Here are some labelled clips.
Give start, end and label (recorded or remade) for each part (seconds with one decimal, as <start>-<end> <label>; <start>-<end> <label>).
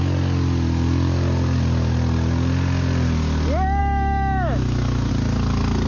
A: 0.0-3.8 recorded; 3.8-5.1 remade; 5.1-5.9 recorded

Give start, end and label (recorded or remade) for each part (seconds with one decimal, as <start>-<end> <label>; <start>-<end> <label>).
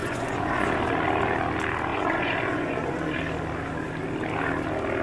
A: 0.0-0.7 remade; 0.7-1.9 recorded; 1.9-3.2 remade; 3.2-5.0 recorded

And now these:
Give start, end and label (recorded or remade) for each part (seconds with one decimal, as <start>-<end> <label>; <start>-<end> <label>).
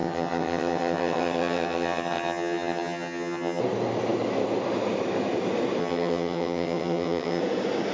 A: 0.0-3.6 remade; 3.6-5.8 recorded; 5.8-7.4 remade; 7.4-7.9 recorded